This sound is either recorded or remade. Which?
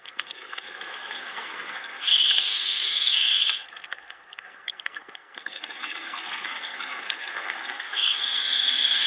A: remade